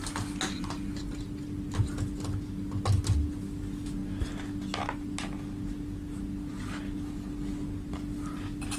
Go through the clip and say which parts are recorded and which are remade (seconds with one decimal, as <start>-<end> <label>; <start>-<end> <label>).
0.0-8.8 recorded